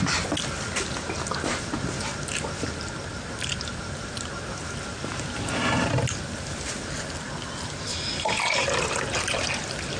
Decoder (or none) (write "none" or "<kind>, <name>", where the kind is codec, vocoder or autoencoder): none